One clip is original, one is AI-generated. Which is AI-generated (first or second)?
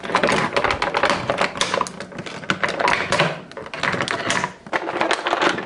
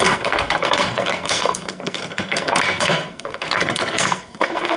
second